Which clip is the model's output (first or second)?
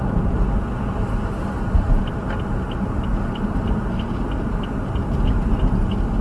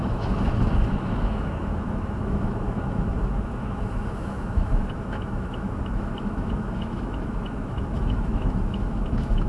second